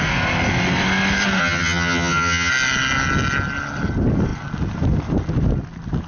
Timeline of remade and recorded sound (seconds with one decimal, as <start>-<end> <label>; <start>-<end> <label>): 0.0-1.4 recorded; 1.4-2.5 remade; 2.5-6.1 recorded